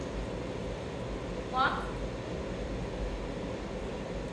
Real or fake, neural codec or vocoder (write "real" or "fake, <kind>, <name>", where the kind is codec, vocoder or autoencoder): real